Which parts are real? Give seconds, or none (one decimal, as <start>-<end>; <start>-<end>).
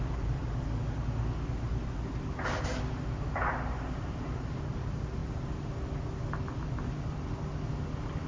0.4-4.8